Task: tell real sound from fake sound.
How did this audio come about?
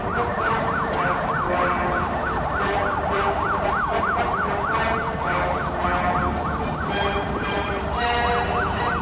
fake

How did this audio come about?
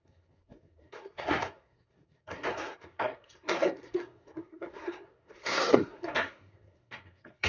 fake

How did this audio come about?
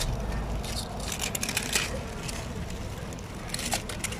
real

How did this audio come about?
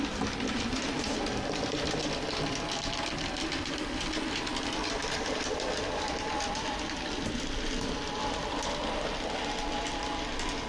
real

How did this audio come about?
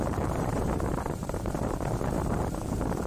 fake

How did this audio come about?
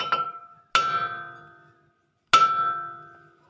real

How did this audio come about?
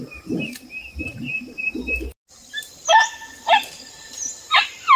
real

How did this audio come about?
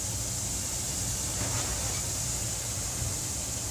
real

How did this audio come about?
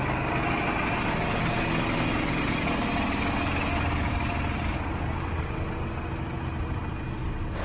real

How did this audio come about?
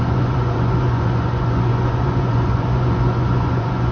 fake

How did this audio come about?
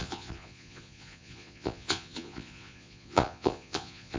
fake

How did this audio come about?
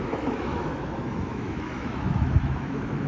fake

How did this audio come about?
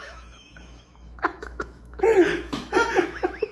fake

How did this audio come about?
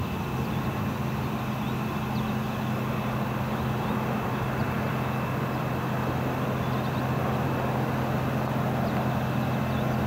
real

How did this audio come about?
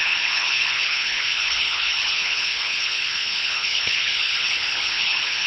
fake